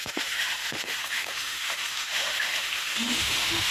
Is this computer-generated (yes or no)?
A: yes